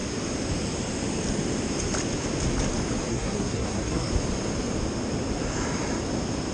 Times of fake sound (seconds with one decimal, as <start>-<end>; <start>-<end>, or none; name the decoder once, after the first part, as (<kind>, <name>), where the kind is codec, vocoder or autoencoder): 3.1-4.1 (codec, SNAC)